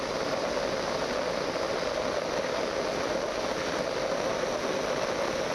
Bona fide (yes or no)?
yes